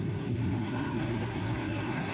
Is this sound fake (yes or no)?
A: yes